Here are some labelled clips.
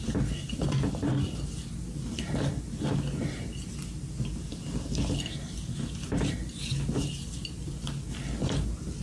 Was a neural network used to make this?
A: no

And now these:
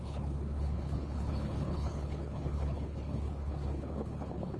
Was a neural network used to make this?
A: yes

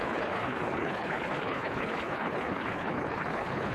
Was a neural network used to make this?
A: yes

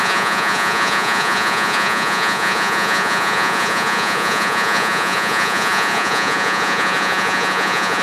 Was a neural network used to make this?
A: yes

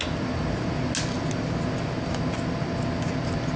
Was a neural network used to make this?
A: no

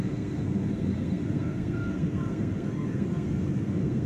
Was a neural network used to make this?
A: yes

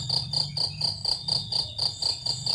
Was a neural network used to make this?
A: yes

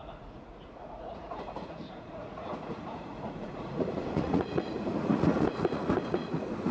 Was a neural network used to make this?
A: yes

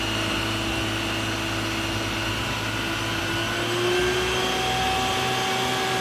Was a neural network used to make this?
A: no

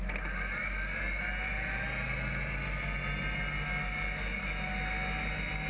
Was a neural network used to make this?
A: no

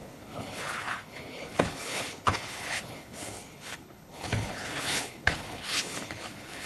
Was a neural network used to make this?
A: yes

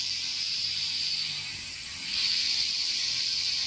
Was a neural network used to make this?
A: yes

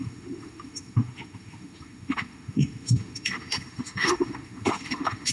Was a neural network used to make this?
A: yes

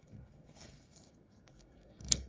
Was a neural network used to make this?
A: yes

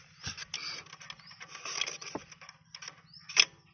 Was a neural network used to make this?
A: no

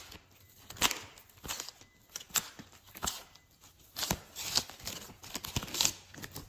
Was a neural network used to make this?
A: no